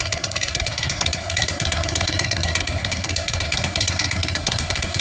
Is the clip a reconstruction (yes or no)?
yes